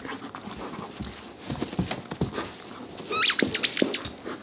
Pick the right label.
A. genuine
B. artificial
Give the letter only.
A